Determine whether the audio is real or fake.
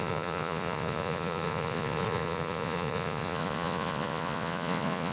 fake